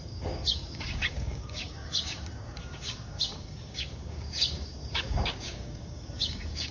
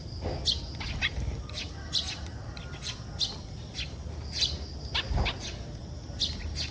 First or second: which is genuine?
second